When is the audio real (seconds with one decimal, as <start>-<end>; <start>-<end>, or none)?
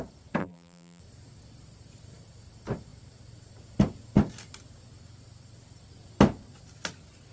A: 0.0-0.4; 1.0-7.3